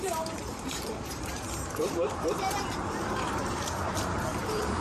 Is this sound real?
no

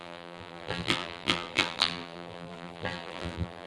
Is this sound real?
no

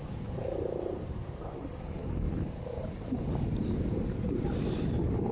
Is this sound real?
no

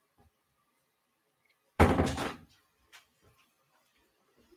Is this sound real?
no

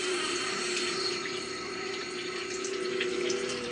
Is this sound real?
no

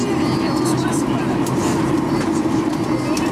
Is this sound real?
yes